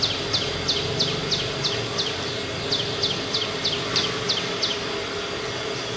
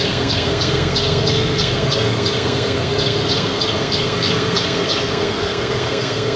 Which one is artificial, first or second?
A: second